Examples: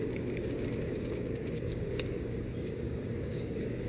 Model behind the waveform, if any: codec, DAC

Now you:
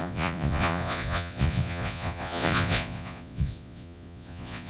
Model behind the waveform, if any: vocoder, Vocos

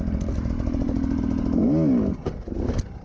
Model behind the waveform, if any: none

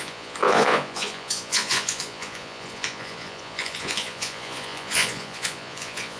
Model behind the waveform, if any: vocoder, Vocos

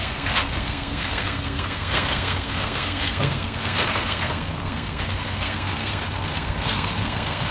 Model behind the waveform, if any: codec, SNAC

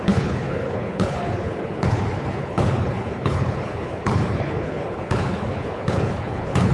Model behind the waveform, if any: codec, HILCodec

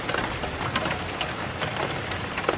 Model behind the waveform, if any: none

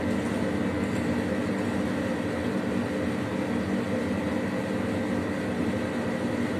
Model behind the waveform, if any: none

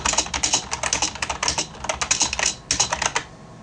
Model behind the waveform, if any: none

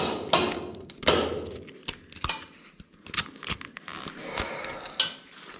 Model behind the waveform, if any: none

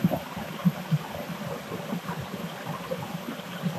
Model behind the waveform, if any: vocoder, BigVGAN v2